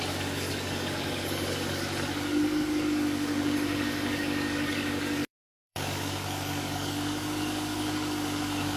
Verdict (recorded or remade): remade